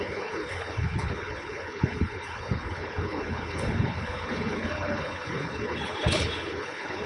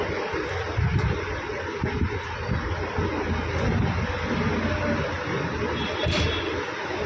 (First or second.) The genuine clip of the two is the second